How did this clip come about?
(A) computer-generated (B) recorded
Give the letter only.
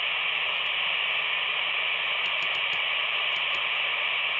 B